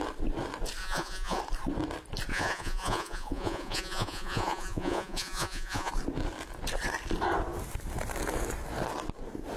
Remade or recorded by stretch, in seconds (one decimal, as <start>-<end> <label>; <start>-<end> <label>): 0.0-0.8 recorded; 0.8-1.4 remade; 1.4-2.3 recorded; 2.3-5.9 remade; 5.9-9.6 recorded